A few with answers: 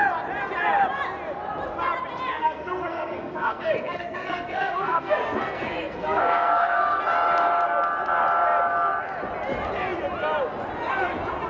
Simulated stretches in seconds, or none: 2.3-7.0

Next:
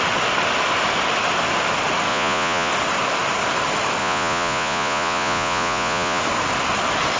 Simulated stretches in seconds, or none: 2.1-2.7; 4.0-6.2